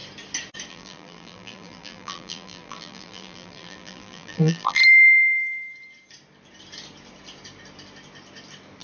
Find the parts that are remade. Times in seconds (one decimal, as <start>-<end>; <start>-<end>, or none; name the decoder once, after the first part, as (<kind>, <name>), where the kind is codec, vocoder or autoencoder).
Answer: 0.7-4.8 (vocoder, BigVGAN v2)